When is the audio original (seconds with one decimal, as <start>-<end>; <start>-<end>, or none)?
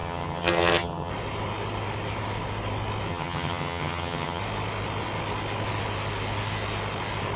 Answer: 1.1-3.1; 4.4-7.4